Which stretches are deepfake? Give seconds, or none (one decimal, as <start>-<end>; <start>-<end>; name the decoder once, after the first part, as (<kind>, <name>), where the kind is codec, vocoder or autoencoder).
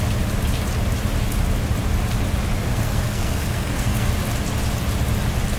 2.7-4.1 (codec, SNAC)